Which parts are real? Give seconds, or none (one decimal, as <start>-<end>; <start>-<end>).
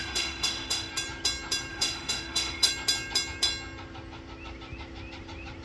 0.9-1.7; 2.7-5.6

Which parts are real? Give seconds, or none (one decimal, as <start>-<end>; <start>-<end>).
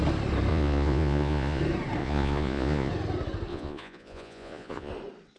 0.0-0.5; 1.6-2.0; 2.9-3.5; 4.9-5.4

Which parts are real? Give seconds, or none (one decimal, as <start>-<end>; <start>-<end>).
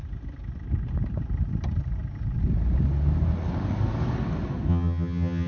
0.0-4.7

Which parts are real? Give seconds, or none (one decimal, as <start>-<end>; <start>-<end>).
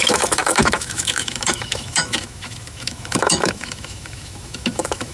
none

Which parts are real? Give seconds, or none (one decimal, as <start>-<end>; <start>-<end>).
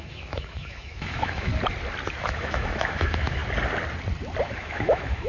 1.5-2.2; 3.4-4.4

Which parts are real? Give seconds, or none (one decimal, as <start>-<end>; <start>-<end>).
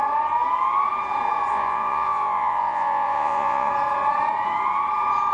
0.0-1.5; 3.7-5.3